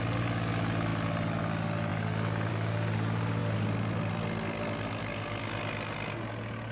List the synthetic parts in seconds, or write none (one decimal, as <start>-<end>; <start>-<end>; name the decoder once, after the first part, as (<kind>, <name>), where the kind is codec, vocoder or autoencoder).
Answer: none